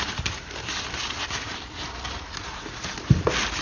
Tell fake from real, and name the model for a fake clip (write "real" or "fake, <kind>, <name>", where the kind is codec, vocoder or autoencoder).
real